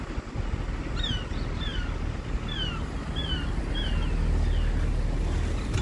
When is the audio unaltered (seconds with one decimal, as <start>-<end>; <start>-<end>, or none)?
0.0-5.8

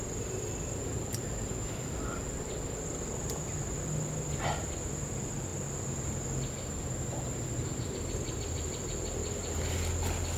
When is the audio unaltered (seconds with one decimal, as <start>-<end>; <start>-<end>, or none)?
0.0-10.4